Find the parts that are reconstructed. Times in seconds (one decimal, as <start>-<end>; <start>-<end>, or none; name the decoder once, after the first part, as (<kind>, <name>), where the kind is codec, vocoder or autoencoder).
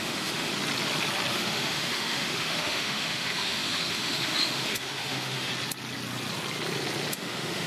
0.0-0.5 (autoencoder, DAC-VAE); 1.3-5.5; 7.1-7.7